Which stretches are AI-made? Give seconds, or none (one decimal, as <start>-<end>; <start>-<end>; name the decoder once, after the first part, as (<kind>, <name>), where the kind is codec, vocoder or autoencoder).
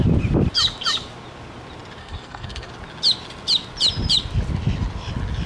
2.0-2.7 (codec, SNAC)